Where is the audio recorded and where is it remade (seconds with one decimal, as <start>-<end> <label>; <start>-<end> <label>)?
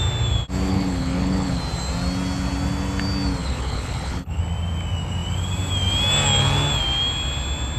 0.0-0.7 recorded; 0.7-1.6 remade; 1.6-3.4 recorded; 3.4-4.4 remade; 4.4-7.8 recorded